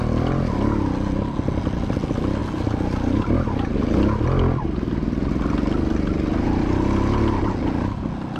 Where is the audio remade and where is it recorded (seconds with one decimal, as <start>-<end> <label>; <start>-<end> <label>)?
0.0-8.4 recorded